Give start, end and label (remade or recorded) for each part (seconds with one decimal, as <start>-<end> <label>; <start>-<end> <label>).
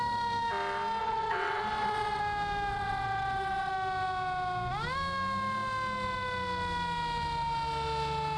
0.0-1.0 recorded; 1.0-2.2 remade; 2.2-2.7 recorded; 2.7-3.7 remade; 3.7-8.4 recorded